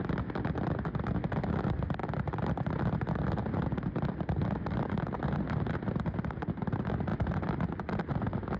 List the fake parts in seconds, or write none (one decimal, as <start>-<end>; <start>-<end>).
none